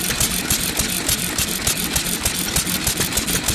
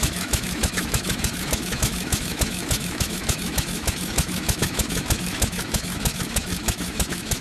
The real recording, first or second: first